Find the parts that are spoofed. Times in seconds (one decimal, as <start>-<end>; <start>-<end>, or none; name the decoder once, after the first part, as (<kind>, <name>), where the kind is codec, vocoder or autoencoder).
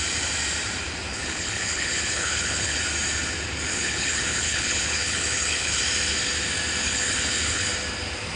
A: 1.1-2.8 (codec, HILCodec); 3.7-5.8; 6.8-7.7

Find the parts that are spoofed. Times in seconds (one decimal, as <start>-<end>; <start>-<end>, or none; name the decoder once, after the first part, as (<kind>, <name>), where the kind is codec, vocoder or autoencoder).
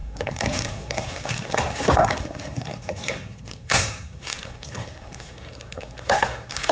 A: 0.0-6.7 (codec, SNAC)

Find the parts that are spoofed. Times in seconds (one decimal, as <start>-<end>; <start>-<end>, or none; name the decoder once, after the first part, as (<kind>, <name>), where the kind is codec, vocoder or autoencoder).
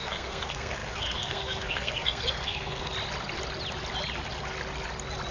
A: 0.0-2.9 (codec, SNAC)